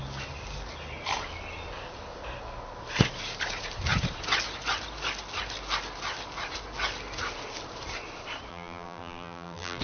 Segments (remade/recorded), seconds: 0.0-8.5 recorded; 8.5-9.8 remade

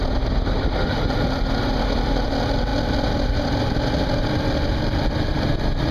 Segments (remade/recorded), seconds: 0.0-5.9 recorded

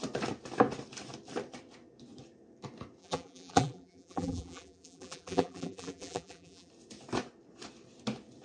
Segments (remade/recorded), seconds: 0.0-3.0 recorded; 3.0-6.7 remade; 6.7-8.4 recorded

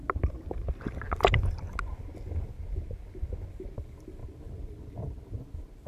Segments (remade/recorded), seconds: 0.0-5.9 recorded